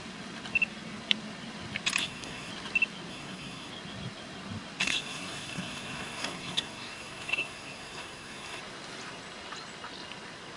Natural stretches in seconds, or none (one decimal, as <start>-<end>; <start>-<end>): 0.0-2.0; 2.5-3.1; 3.7-4.8; 8.6-10.6